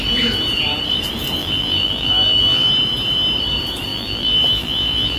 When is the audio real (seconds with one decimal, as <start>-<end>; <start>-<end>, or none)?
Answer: 0.0-1.4; 2.7-3.9